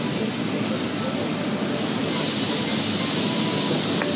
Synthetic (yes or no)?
no